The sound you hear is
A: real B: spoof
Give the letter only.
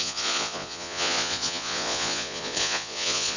B